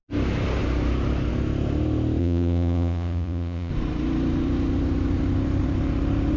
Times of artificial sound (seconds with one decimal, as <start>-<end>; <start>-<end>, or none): 2.2-3.7